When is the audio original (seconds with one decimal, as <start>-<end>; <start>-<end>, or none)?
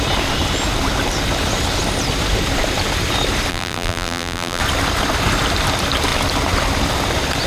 0.0-3.5; 4.6-7.5